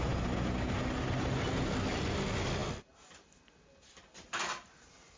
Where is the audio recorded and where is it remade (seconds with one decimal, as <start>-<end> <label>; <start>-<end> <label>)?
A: 0.0-5.2 recorded